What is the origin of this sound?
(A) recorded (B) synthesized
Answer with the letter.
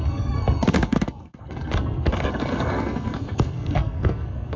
B